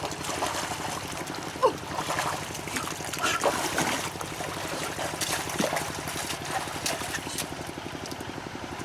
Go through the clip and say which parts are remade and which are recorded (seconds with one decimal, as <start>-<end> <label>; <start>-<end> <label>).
0.0-8.8 recorded